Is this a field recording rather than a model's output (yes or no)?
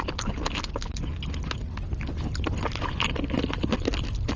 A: yes